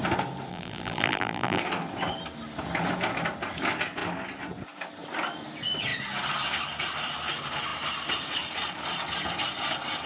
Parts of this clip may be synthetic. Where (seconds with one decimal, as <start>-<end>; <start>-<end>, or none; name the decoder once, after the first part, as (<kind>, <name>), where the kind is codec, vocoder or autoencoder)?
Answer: 0.5-1.6 (vocoder, BigVGAN v2)